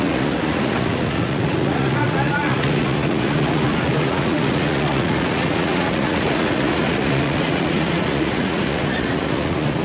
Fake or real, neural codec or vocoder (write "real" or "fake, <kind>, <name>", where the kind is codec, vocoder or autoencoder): fake, vocoder, Vocos